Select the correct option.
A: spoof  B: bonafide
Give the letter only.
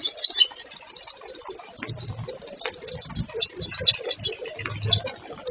B